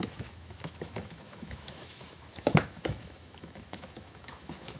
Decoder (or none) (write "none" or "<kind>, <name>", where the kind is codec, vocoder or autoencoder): autoencoder, DAC-VAE